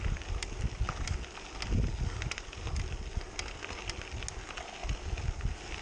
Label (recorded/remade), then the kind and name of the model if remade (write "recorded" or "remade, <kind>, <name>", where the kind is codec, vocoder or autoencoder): recorded